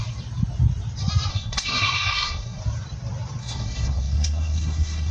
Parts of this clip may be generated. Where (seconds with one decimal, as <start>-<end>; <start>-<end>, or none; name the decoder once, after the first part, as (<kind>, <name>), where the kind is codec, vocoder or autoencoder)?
1.3-2.6 (codec, SNAC); 3.4-5.1